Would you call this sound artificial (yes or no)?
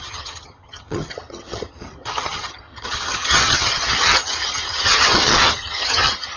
yes